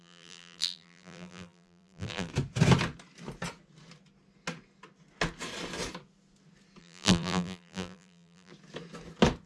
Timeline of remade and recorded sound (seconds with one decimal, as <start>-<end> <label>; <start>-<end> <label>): 0.0-2.3 remade; 2.3-6.8 recorded; 6.8-8.5 remade; 8.5-9.5 recorded